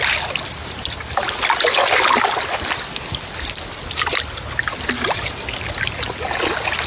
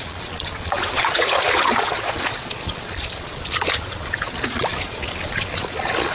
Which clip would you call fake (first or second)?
second